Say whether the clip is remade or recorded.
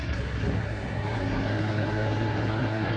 remade